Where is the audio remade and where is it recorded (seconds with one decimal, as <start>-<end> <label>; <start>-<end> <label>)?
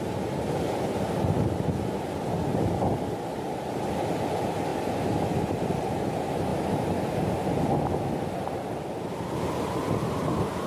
0.0-10.7 recorded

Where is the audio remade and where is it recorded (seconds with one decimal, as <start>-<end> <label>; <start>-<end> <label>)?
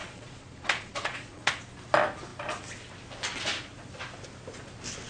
0.0-1.5 remade; 1.5-5.1 recorded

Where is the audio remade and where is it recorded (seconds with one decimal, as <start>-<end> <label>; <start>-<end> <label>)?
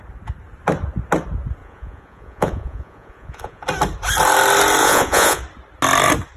0.0-1.6 recorded; 1.6-3.6 remade; 3.6-4.8 recorded; 4.8-5.4 remade; 5.4-6.4 recorded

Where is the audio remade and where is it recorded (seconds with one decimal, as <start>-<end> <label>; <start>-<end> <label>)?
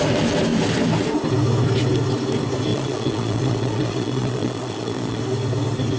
0.0-2.7 recorded; 2.7-5.2 remade; 5.2-6.0 recorded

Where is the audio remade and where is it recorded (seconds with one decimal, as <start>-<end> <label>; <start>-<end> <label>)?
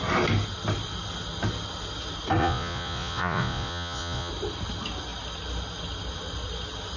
0.0-2.4 recorded; 2.4-4.3 remade; 4.3-7.0 recorded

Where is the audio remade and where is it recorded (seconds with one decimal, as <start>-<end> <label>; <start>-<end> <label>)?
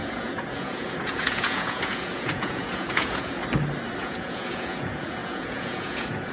0.0-3.4 remade; 3.4-4.0 recorded; 4.0-6.3 remade